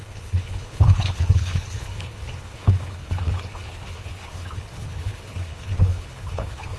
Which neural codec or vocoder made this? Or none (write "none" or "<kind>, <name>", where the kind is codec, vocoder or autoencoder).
codec, HILCodec